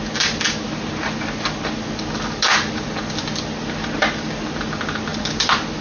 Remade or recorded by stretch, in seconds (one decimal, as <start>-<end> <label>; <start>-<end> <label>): 0.0-5.8 recorded